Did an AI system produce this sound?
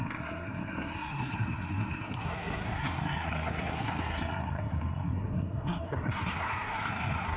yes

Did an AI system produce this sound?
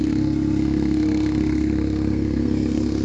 yes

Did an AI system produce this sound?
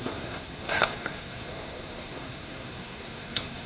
yes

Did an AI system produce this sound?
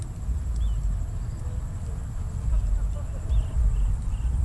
no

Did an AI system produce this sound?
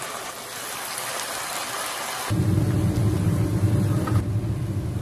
no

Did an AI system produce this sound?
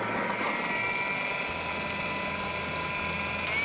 no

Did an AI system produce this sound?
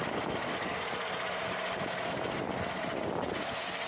no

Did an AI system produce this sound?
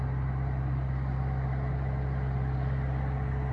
no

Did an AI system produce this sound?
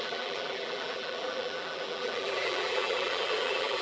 yes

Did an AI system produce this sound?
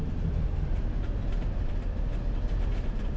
no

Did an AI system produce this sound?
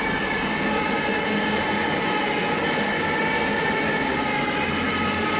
no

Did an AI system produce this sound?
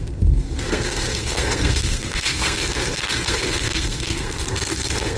yes